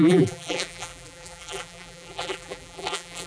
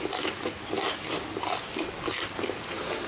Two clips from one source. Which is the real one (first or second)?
second